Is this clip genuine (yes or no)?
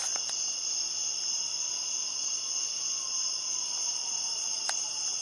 no